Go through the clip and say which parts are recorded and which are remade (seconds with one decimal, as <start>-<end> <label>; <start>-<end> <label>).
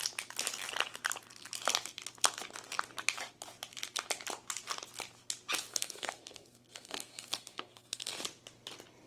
0.0-5.7 recorded; 5.7-8.2 remade; 8.2-9.1 recorded